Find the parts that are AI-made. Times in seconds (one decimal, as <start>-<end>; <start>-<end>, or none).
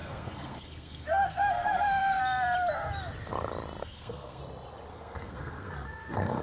0.0-2.2; 3.8-4.4; 4.9-6.4